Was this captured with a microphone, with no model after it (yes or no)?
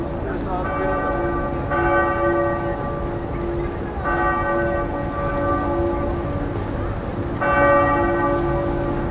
yes